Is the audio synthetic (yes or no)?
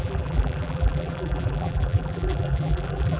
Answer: yes